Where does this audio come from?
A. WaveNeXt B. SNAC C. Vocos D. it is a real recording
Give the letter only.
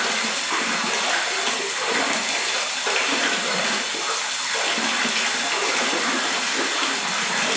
D